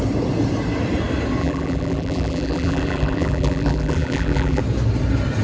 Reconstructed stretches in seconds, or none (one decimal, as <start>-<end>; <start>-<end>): 1.4-4.6